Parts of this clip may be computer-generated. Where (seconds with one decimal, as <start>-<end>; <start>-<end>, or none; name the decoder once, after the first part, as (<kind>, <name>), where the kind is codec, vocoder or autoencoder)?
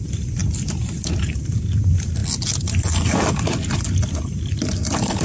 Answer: none